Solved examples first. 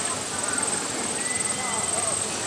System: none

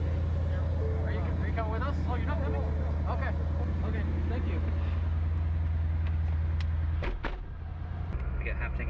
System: none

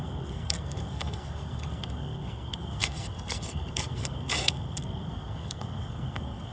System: codec, SNAC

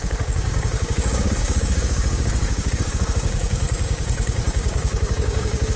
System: codec, DAC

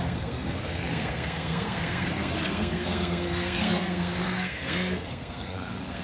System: codec, SNAC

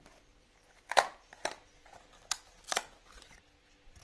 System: none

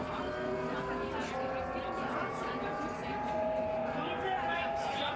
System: none